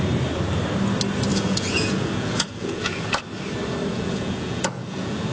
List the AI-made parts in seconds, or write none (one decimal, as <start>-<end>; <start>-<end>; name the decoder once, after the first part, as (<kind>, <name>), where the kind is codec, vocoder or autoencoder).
1.3-3.2 (vocoder, Vocos); 3.9-5.3